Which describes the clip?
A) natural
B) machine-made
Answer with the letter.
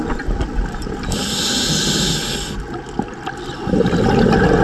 A